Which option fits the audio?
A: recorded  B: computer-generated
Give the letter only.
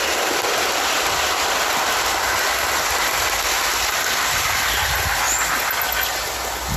A